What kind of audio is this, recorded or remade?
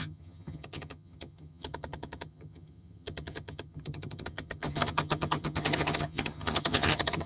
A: remade